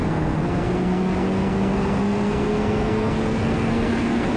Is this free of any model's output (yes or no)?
no